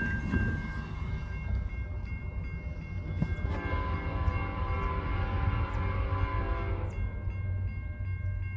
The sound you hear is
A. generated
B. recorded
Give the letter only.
B